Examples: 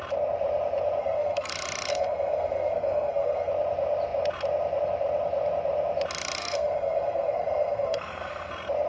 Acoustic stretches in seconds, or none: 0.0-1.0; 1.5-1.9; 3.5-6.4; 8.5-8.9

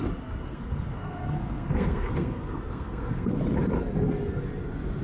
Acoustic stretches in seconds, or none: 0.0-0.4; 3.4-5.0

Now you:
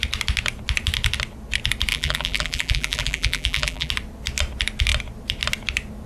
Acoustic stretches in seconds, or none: 0.0-1.9; 3.9-6.1